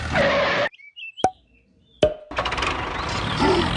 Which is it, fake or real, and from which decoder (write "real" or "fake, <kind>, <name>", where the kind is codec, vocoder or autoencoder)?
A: real